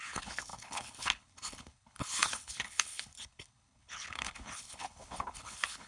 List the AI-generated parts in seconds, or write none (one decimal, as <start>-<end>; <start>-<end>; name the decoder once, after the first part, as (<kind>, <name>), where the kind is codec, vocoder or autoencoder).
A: 0.0-5.9 (codec, HILCodec)